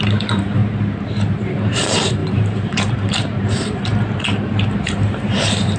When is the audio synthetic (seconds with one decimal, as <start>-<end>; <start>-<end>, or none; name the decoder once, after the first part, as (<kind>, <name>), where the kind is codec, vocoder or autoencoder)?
0.0-0.6 (vocoder, BigVGAN v2); 1.7-3.9; 4.5-5.8